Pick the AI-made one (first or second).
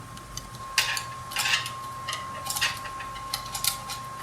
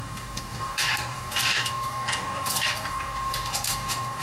second